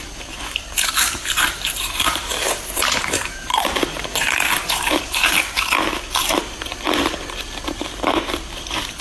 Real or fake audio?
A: fake